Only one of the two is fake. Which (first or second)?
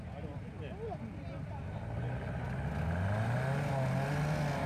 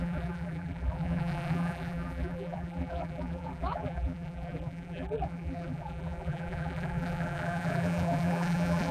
second